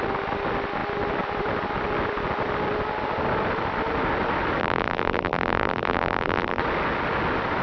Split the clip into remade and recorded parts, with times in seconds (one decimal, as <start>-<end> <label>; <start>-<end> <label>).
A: 0.0-4.6 recorded; 4.6-6.6 remade; 6.6-7.6 recorded